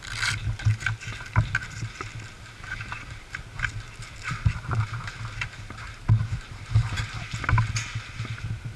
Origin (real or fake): real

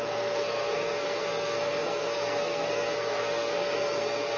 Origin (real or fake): fake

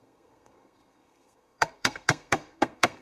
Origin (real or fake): fake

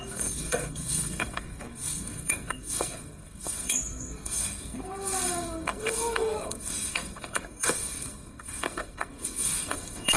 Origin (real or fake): fake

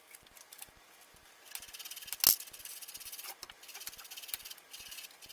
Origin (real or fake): real